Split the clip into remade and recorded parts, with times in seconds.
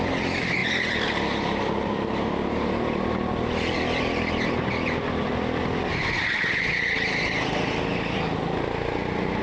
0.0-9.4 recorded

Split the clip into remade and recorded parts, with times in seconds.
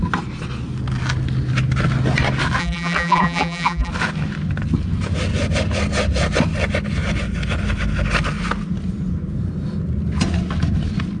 0.0-2.6 recorded; 2.6-3.9 remade; 3.9-11.2 recorded